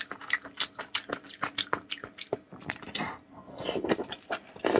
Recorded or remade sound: recorded